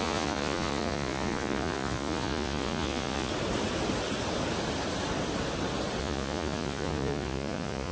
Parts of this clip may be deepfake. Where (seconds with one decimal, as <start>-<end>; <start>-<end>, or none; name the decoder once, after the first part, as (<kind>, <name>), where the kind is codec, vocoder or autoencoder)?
0.0-3.3 (vocoder, Vocos); 6.0-7.9